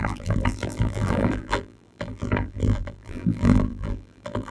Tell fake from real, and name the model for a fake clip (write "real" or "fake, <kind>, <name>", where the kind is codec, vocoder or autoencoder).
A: fake, vocoder, BigVGAN v2